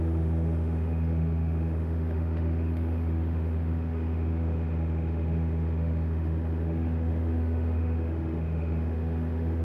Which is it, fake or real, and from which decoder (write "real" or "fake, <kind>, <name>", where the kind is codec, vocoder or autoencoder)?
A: fake, autoencoder, DAC-VAE